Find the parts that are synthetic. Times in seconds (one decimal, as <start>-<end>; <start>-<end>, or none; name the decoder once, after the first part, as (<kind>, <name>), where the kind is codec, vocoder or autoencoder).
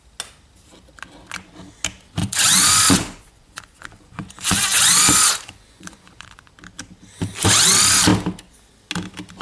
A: 2.2-6.5 (vocoder, Vocos)